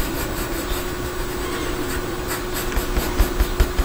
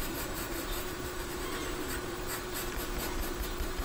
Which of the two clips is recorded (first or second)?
first